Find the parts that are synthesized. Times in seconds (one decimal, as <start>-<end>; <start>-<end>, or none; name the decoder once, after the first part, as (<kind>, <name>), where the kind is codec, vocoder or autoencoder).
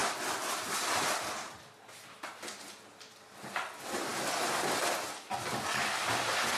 none